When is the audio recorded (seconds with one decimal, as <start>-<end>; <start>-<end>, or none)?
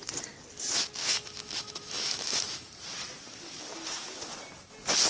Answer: 0.0-1.0; 2.7-5.1